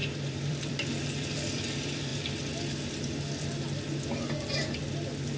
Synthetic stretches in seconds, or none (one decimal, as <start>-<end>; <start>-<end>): 0.0-2.1; 4.8-5.4